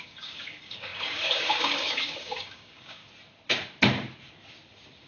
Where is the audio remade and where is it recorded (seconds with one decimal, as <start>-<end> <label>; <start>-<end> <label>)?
0.0-3.0 remade; 3.0-5.1 recorded